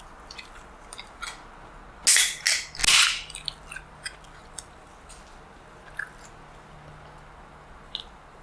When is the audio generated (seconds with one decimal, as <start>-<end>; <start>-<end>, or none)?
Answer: none